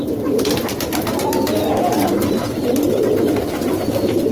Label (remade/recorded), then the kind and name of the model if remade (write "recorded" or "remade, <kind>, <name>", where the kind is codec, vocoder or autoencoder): recorded